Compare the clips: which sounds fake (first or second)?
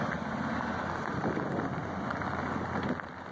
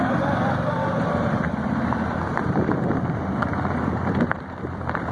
second